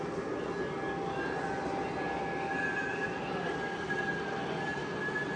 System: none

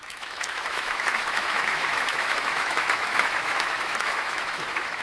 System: autoencoder, DAC-VAE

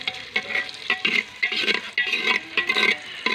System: none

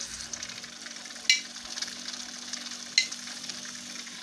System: none